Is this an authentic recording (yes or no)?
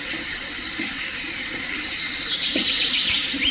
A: yes